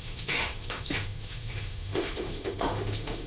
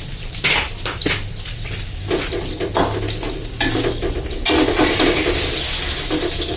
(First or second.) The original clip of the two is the second